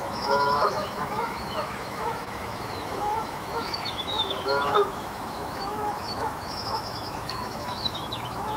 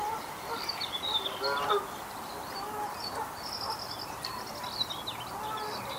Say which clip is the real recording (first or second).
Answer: second